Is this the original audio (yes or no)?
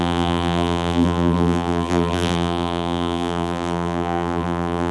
no